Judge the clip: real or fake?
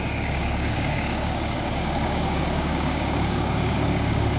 fake